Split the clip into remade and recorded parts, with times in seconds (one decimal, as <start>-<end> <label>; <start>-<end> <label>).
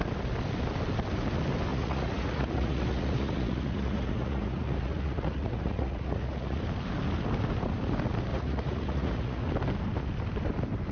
0.0-1.7 recorded; 1.7-6.6 remade; 6.6-8.3 recorded; 8.3-9.4 remade; 9.4-10.9 recorded